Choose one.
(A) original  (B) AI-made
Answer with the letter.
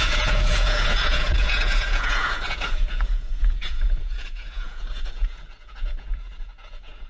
B